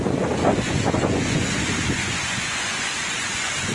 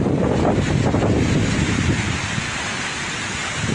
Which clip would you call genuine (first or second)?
second